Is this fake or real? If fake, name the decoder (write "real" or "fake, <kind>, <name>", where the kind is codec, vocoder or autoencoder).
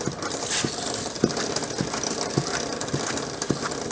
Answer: real